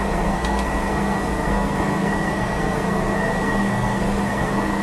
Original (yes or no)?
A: no